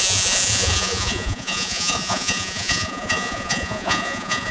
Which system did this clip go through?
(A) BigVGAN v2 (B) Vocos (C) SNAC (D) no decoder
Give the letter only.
B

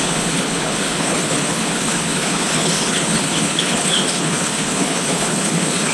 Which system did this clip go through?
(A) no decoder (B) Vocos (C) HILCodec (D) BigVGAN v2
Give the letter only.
C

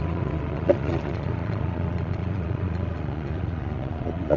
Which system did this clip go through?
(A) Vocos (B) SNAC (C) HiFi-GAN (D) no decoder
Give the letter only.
A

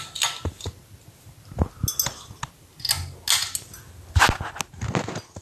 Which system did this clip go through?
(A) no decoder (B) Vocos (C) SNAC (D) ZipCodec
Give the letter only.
A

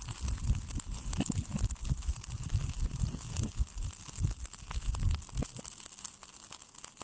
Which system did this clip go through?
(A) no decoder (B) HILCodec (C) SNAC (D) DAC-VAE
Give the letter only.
A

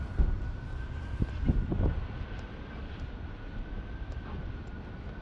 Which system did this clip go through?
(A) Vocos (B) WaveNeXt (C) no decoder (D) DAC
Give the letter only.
C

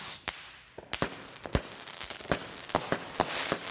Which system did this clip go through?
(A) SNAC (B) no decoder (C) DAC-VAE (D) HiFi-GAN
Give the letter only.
B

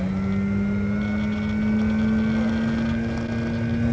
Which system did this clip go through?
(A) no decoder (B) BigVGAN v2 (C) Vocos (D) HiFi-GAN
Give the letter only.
A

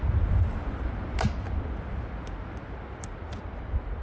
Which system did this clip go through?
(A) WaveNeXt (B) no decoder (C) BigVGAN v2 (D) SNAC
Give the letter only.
B